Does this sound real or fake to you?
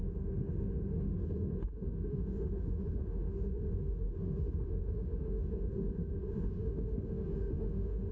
fake